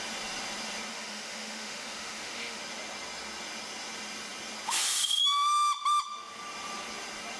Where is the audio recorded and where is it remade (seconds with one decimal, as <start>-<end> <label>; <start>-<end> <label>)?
0.0-0.9 recorded; 0.9-2.6 remade; 2.6-7.4 recorded